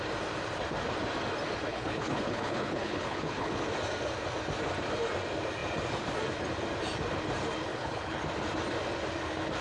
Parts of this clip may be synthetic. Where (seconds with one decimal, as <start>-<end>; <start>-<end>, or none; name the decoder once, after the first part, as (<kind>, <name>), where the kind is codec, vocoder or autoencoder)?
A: 1.7-3.5 (codec, HILCodec); 7.7-8.2